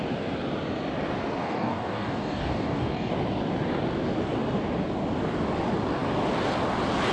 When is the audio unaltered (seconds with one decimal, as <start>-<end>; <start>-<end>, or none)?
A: 0.0-1.4; 3.1-7.1